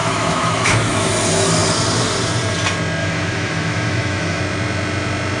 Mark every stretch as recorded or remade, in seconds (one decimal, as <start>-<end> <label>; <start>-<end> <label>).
0.0-1.1 remade; 1.1-3.0 recorded; 3.0-4.4 remade; 4.4-5.4 recorded